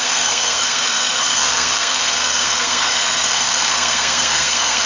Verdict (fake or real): fake